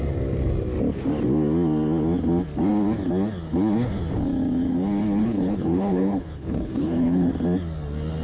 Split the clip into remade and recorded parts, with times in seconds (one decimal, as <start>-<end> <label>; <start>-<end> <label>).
0.0-5.2 recorded; 5.2-7.3 remade; 7.3-8.2 recorded